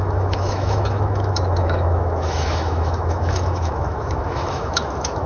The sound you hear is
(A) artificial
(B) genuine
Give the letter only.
A